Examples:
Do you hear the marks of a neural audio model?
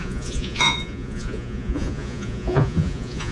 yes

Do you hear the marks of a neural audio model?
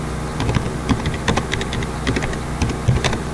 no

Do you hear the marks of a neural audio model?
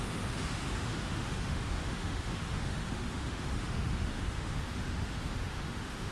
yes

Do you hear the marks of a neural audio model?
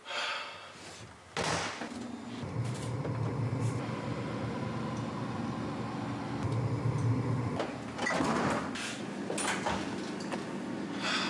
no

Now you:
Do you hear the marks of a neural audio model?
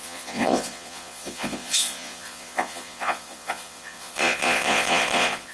yes